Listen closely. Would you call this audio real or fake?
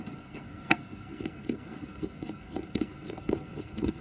fake